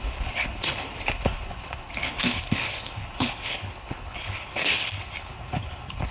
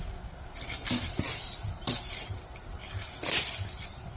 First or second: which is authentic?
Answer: second